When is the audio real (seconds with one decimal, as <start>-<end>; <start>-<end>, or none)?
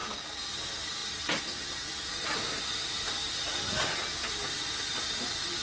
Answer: 1.0-2.1; 3.2-4.3